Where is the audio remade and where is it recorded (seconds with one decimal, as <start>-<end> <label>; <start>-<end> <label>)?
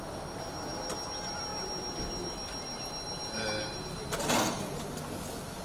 0.0-5.6 recorded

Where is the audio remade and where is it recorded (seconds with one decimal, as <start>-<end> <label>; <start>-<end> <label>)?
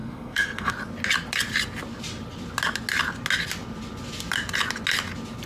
0.0-0.7 remade; 0.7-5.5 recorded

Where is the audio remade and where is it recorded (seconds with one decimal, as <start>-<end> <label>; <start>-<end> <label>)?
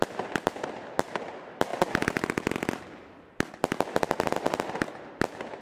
0.0-5.6 recorded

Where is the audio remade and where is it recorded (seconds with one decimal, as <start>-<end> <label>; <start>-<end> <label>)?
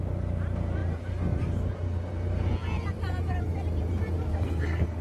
0.0-4.3 recorded; 4.3-5.0 remade